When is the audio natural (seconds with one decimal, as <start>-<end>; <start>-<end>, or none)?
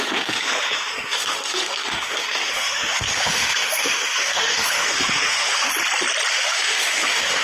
5.7-6.3